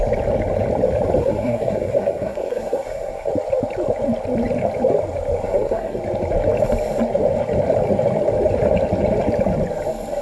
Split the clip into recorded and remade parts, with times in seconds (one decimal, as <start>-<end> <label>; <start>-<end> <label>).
0.0-1.2 recorded; 1.2-3.3 remade; 3.3-5.4 recorded; 5.4-6.0 remade; 6.0-10.2 recorded